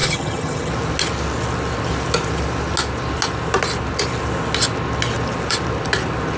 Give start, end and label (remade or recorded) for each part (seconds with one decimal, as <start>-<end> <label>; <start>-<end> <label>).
0.0-0.7 remade; 0.7-6.4 recorded